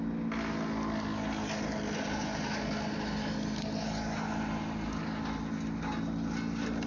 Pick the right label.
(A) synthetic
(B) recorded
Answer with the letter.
B